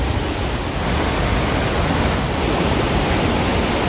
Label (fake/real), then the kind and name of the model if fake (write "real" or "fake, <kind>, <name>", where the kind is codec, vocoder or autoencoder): real